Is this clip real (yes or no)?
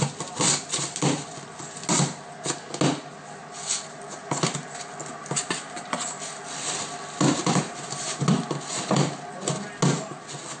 yes